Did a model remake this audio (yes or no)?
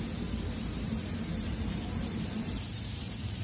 yes